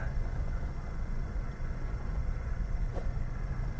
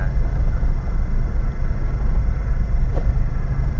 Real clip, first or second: second